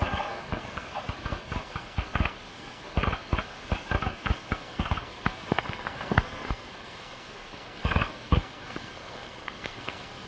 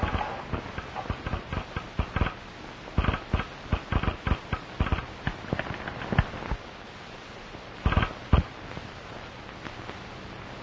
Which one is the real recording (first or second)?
second